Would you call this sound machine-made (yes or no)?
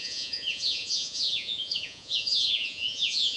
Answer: yes